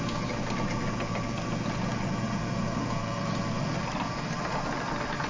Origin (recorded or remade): recorded